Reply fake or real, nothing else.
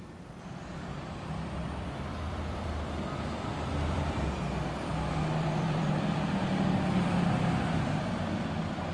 fake